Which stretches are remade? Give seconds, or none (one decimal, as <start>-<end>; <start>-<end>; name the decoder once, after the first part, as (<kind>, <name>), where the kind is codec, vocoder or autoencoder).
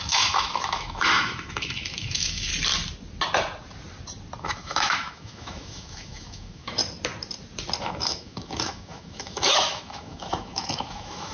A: 0.0-2.5 (autoencoder, DAC-VAE); 4.4-6.8; 7.8-11.3